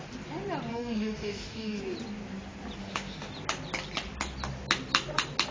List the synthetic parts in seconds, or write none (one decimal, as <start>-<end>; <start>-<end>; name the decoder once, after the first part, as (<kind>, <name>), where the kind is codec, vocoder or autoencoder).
0.7-1.8 (autoencoder, DAC-VAE); 2.8-3.3